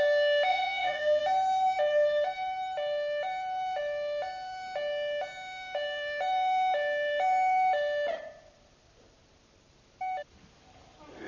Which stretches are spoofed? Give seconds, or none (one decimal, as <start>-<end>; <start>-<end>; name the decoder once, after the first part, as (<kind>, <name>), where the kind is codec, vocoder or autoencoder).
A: 0.5-1.2 (vocoder, Vocos)